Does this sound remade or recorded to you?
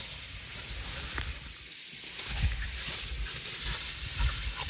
remade